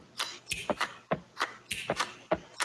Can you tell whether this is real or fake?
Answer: real